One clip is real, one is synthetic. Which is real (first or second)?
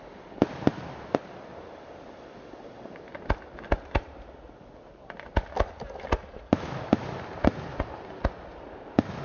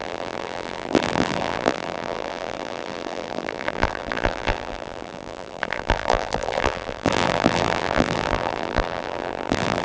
first